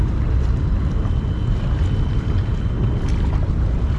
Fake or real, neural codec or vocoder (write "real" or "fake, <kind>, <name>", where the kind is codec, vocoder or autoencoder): real